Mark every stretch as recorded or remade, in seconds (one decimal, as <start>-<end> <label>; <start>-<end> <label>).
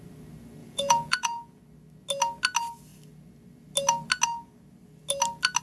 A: 0.0-0.6 recorded; 0.6-1.6 remade; 1.6-5.6 recorded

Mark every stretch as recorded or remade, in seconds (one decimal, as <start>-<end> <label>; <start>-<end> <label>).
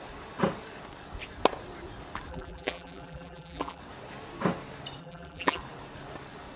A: 0.0-2.3 recorded; 2.3-3.8 remade; 3.8-5.0 recorded; 5.0-5.6 remade; 5.6-6.6 recorded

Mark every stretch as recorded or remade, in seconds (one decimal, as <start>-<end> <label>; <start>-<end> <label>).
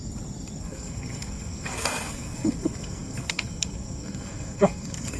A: 0.0-0.6 recorded; 0.6-5.2 remade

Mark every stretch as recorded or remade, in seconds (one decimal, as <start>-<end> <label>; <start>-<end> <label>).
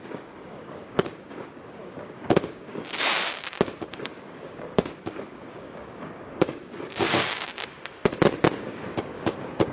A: 0.0-8.0 remade; 8.0-8.7 recorded; 8.7-9.7 remade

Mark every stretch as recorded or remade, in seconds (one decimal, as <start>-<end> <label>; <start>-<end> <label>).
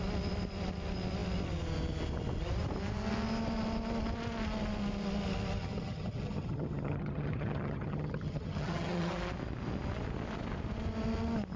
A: 0.0-5.6 recorded; 5.6-9.1 remade; 9.1-11.6 recorded